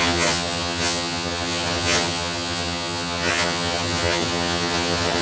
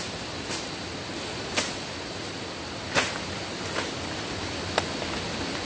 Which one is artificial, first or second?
first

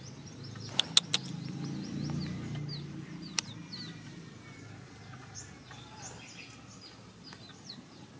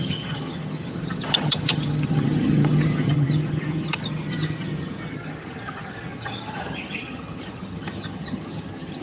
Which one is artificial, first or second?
second